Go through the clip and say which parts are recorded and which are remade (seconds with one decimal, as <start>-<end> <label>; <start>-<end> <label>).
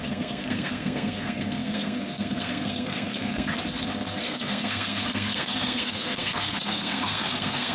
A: 0.0-3.6 remade; 3.6-4.2 recorded; 4.2-7.7 remade